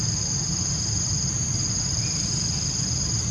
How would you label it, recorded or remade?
recorded